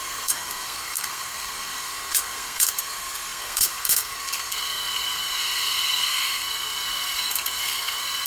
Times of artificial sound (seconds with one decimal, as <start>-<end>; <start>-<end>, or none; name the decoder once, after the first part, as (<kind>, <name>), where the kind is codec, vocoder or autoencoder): 0.0-8.3 (codec, SNAC)